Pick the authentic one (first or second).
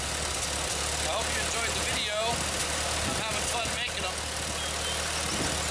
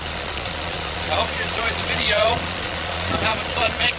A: first